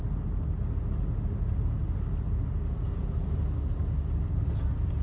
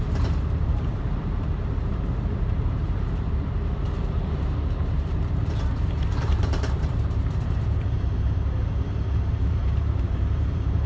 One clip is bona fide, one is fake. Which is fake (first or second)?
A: second